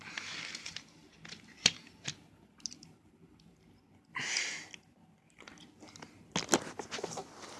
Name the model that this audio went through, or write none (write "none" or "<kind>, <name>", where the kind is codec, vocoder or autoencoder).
none